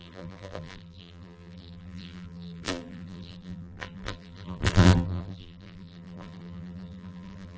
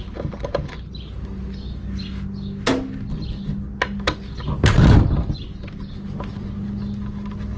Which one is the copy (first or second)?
first